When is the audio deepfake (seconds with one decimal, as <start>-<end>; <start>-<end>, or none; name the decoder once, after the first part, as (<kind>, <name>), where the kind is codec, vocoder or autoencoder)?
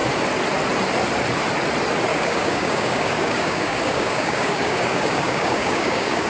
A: 2.1-6.3 (codec, DAC)